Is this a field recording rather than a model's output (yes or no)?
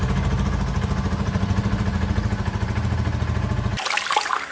yes